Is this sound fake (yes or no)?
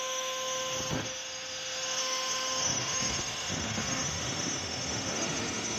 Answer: yes